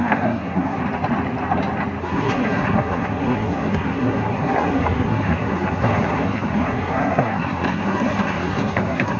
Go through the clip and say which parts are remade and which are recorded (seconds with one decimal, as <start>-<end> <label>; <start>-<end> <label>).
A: 0.0-0.8 remade; 0.8-2.0 recorded; 2.0-9.2 remade